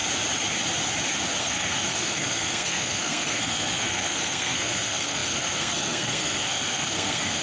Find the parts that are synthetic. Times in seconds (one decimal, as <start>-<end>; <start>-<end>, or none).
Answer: 1.4-7.4